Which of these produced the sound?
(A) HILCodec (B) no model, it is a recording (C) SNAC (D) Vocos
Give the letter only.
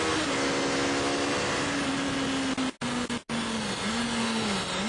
B